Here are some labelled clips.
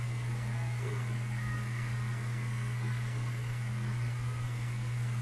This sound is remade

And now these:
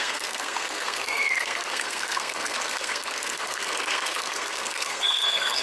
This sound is remade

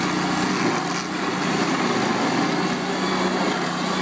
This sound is recorded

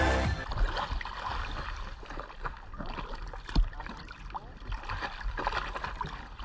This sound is recorded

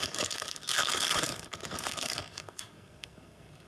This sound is remade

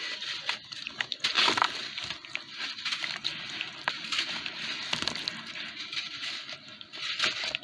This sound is recorded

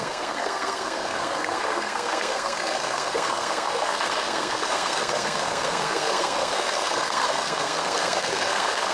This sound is remade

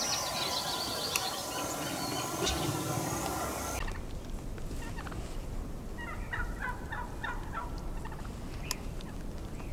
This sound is recorded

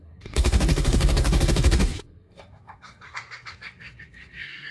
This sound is remade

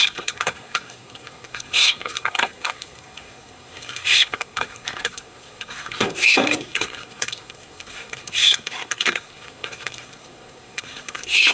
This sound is remade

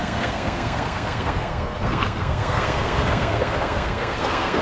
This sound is remade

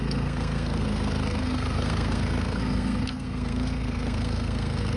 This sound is remade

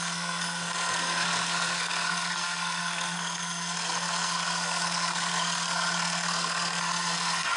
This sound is remade